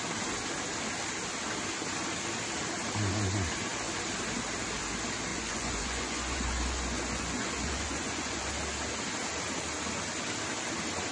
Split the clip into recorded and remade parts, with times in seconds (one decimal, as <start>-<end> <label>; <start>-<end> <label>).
0.0-5.3 recorded; 5.3-8.5 remade; 8.5-11.1 recorded